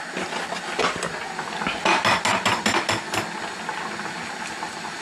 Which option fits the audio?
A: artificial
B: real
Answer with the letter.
B